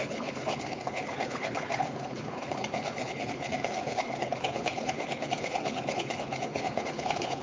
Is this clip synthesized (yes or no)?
yes